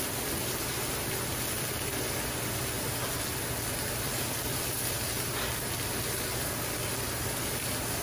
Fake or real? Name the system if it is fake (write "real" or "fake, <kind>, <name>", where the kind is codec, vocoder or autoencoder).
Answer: real